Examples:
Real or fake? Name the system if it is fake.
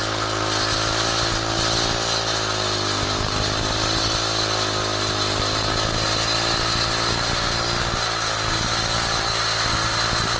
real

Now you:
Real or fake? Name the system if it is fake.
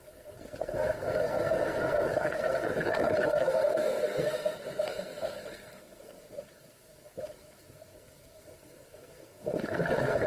fake, codec, SNAC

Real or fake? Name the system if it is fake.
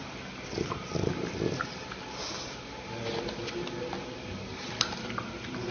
real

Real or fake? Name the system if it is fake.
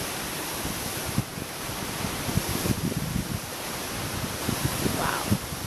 real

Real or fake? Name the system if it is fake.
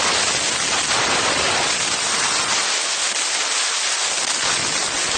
real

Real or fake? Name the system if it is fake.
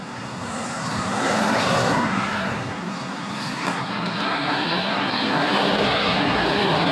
fake, codec, SNAC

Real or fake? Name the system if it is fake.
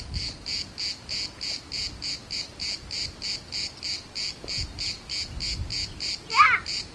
real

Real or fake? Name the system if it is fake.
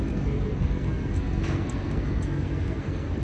fake, codec, SNAC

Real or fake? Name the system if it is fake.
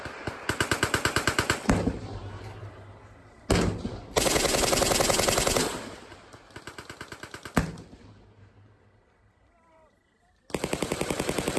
real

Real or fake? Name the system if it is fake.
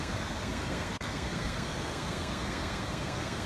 fake, codec, SNAC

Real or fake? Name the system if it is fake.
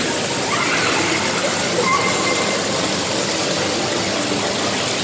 real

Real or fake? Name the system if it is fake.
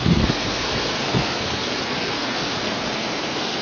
fake, codec, SNAC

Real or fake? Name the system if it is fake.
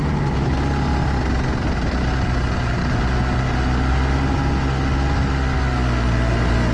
real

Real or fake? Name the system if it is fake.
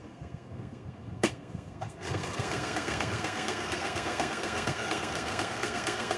fake, codec, SNAC